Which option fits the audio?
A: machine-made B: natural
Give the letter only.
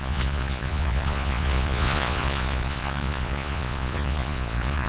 A